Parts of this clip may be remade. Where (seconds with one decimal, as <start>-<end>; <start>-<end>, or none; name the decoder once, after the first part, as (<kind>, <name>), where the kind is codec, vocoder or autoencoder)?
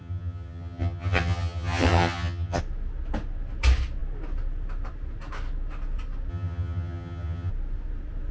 0.0-2.6 (vocoder, HiFi-GAN); 6.3-7.5